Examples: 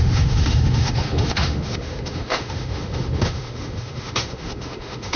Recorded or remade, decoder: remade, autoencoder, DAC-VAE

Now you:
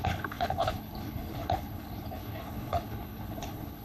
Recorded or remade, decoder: remade, codec, HILCodec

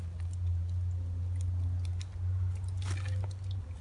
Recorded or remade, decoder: recorded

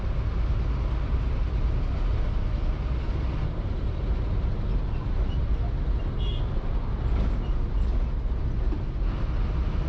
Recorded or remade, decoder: recorded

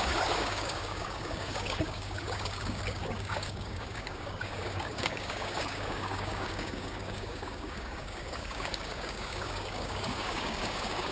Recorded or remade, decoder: remade, codec, DAC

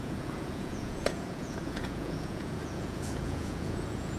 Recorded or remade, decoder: remade, vocoder, Vocos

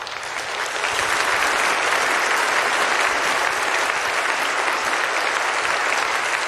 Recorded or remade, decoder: recorded